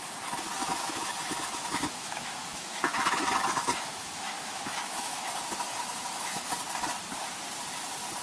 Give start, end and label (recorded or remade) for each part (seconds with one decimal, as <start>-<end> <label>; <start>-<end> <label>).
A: 0.0-0.6 recorded; 0.6-5.3 remade; 5.3-5.7 recorded; 5.7-6.5 remade; 6.5-8.2 recorded